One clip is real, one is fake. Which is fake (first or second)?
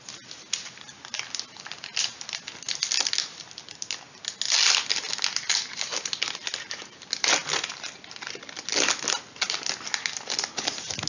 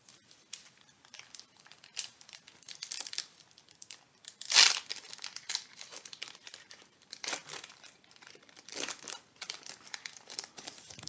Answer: second